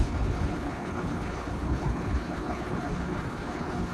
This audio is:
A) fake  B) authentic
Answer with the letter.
A